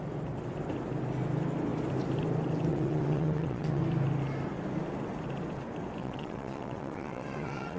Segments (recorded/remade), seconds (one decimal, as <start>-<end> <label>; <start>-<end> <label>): 0.0-2.7 recorded; 2.7-3.8 remade; 3.8-6.0 recorded; 6.0-7.8 remade